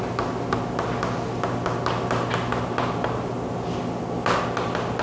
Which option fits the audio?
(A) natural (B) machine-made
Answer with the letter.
A